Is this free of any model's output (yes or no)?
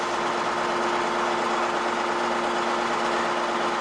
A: yes